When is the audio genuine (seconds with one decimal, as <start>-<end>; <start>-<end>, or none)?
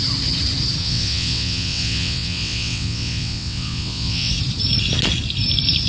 0.0-0.8; 4.3-5.9